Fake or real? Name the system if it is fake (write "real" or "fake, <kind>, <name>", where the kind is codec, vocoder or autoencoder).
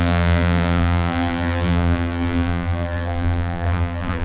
fake, vocoder, BigVGAN v2